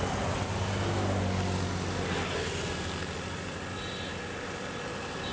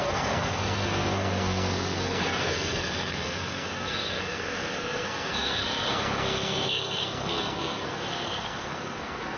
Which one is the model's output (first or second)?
second